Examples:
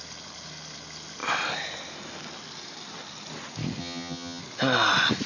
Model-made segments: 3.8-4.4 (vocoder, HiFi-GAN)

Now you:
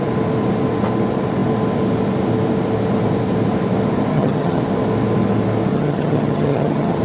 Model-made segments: 4.1-4.6 (vocoder, HiFi-GAN); 5.7-7.0

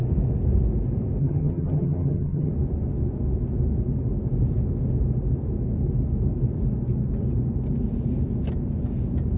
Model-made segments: 1.2-2.5 (vocoder, HiFi-GAN)

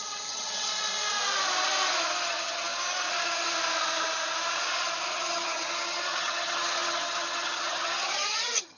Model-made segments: 0.0-0.7 (vocoder, HiFi-GAN); 2.3-2.7; 5.1-8.8

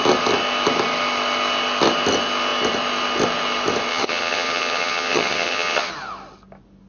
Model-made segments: 3.9-5.9 (vocoder, HiFi-GAN)